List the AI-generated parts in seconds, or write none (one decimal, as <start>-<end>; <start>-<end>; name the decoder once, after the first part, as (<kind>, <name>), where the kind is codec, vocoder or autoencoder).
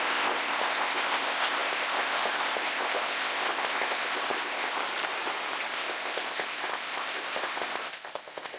0.0-4.8 (codec, ZipCodec); 5.7-8.6